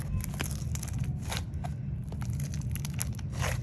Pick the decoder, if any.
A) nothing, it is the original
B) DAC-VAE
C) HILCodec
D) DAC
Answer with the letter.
A